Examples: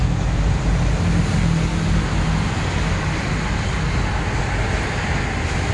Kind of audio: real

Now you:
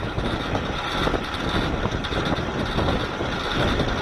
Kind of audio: real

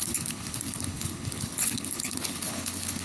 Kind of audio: fake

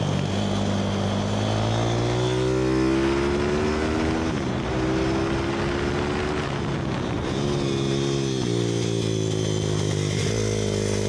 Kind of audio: real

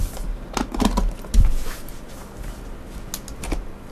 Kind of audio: real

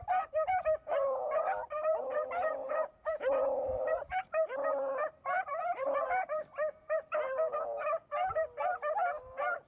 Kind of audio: fake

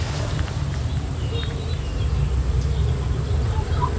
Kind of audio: fake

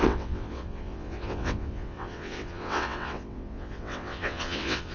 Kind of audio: fake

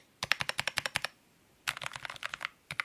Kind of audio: real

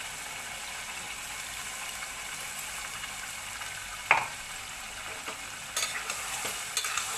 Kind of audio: real